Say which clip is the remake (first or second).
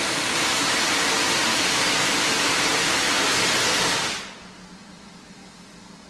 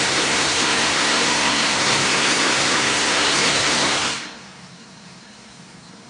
second